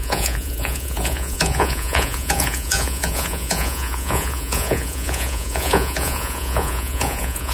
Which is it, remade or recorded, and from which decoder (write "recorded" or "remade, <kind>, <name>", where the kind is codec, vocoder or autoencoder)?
remade, vocoder, Vocos